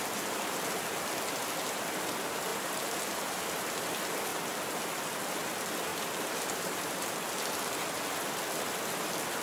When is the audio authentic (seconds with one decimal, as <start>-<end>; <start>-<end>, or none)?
0.0-2.5; 3.5-5.9; 7.1-9.4